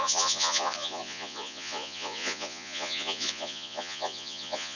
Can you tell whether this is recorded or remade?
remade